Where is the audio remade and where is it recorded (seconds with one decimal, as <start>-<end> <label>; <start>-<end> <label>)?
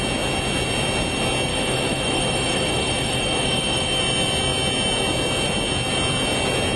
0.0-1.5 recorded; 1.5-4.0 remade; 4.0-6.8 recorded